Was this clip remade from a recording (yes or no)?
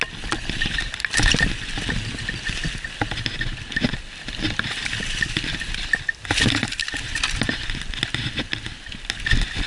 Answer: no